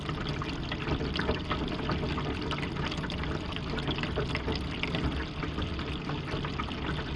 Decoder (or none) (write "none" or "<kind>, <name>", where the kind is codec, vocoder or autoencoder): none